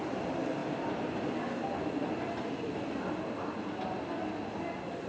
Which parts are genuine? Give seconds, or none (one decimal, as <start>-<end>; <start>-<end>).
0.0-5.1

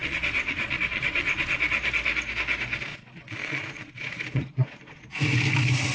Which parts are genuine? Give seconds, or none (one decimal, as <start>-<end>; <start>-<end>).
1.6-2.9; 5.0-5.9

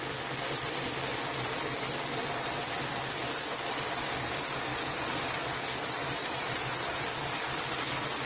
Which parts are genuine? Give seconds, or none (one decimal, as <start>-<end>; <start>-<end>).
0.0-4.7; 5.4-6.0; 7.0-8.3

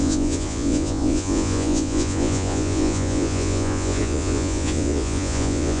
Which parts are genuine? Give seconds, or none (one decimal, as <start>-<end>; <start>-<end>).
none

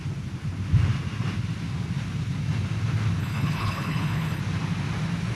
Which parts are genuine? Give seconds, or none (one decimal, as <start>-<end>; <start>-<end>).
0.0-3.2; 4.4-5.3

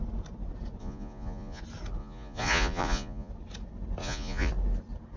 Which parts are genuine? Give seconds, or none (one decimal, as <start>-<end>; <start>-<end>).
0.0-0.8; 1.6-2.0; 3.3-4.0; 4.5-5.2

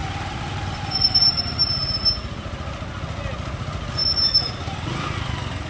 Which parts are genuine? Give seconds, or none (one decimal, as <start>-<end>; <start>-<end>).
0.0-5.7

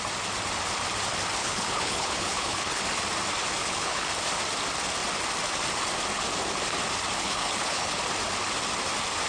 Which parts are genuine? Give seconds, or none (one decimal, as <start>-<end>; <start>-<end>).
0.0-1.4; 2.8-3.6; 4.1-7.2; 8.0-9.3